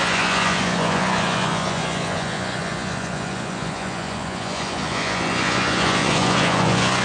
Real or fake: fake